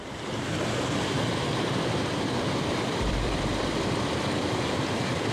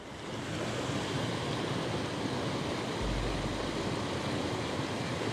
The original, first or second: second